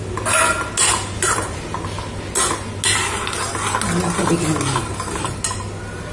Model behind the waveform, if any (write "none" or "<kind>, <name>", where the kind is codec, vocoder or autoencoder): none